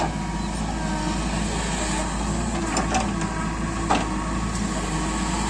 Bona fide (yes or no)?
yes